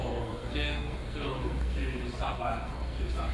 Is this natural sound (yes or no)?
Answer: no